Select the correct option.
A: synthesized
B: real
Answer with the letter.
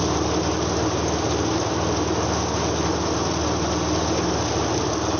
B